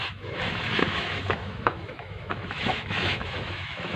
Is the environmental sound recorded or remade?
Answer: remade